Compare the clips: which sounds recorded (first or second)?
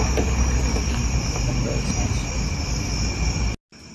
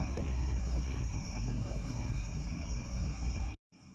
first